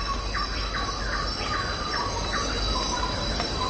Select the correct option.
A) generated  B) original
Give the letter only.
B